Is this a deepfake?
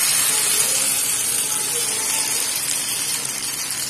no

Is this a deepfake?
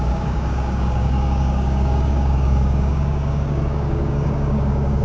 yes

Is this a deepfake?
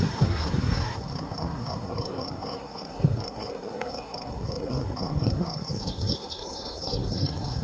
yes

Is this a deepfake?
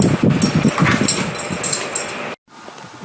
no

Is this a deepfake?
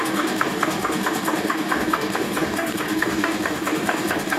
yes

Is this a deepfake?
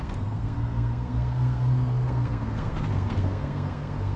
yes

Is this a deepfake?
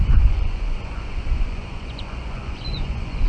yes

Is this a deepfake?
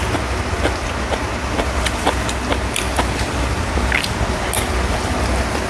no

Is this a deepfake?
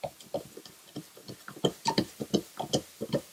no